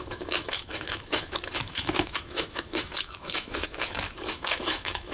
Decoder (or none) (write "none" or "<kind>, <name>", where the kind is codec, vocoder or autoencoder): autoencoder, DAC-VAE